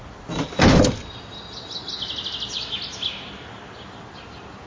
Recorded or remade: recorded